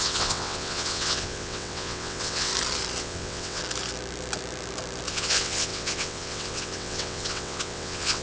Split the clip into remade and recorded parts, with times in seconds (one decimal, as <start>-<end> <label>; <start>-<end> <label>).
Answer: 0.0-2.5 remade; 2.5-3.0 recorded; 3.0-3.6 remade; 3.6-5.1 recorded; 5.1-8.2 remade